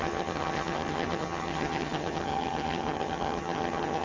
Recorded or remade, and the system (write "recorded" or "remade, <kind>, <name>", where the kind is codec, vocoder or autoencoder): remade, vocoder, HiFi-GAN